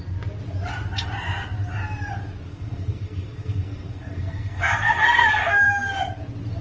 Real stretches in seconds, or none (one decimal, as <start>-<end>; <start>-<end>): 0.0-2.5; 6.0-6.6